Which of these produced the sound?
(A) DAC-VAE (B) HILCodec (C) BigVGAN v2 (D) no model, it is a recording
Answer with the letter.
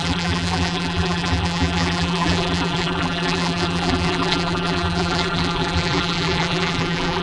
C